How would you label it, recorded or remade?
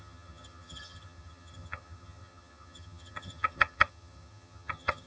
remade